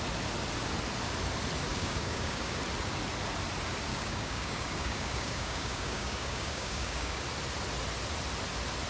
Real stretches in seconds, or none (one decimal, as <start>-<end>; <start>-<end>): 0.0-1.7; 2.6-3.9; 7.2-8.9